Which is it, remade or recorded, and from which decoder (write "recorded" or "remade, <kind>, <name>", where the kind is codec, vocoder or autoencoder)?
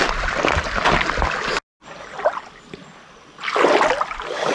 recorded